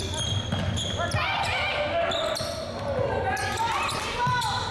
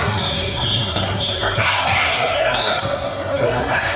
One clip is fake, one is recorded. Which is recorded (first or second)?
first